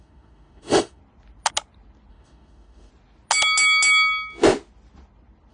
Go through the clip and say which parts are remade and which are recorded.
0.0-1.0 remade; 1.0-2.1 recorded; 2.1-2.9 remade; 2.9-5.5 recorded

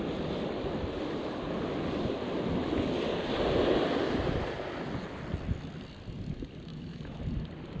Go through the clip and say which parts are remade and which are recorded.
0.0-6.7 recorded; 6.7-7.2 remade; 7.2-7.8 recorded

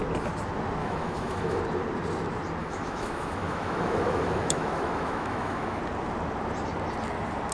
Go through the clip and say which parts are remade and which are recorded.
0.0-0.8 recorded; 0.8-1.6 remade; 1.6-2.6 recorded; 2.6-5.8 remade; 5.8-7.5 recorded

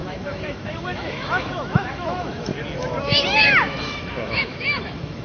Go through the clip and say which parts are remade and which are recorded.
0.0-2.5 remade; 2.5-3.0 recorded; 3.0-5.2 remade

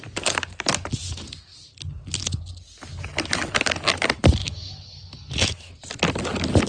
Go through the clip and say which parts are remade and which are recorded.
0.0-4.4 recorded; 4.4-5.7 remade; 5.7-6.7 recorded

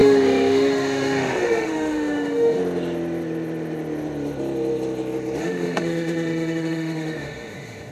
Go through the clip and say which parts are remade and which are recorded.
0.0-2.6 remade; 2.6-5.4 recorded; 5.4-7.9 remade

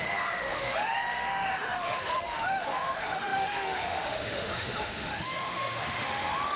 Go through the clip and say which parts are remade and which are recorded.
0.0-6.6 remade

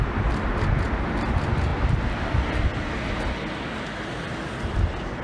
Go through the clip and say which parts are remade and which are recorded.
0.0-5.2 recorded